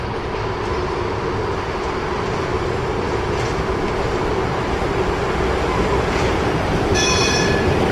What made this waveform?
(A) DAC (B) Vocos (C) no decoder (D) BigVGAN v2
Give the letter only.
C